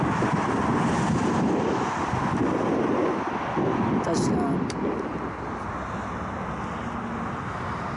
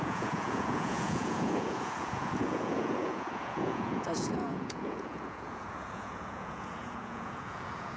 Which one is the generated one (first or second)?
second